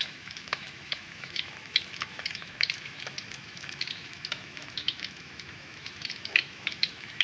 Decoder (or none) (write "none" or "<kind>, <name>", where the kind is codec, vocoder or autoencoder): autoencoder, DAC-VAE